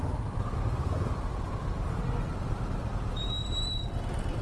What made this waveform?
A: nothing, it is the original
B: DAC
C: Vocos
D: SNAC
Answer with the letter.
A